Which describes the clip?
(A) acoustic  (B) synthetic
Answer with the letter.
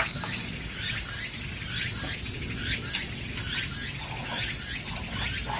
A